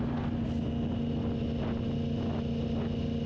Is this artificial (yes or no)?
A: no